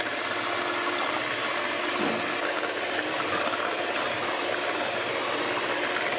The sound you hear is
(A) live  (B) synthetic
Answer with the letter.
A